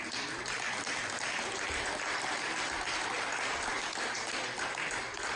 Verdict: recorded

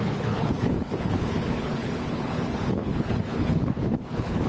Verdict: remade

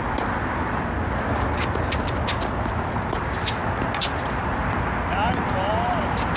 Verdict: recorded